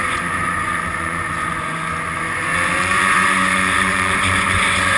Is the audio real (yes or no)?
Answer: no